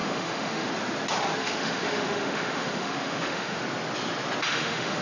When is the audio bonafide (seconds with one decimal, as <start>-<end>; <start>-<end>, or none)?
0.7-1.4; 3.6-4.5